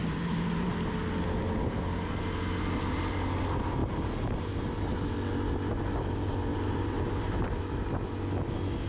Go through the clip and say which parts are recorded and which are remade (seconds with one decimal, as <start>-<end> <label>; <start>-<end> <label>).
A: 0.0-0.7 remade; 0.7-3.8 recorded; 3.8-4.9 remade; 4.9-6.5 recorded; 6.5-7.2 remade; 7.2-8.9 recorded